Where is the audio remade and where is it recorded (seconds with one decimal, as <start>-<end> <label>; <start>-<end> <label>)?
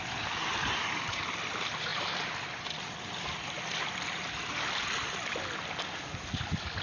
0.0-6.8 recorded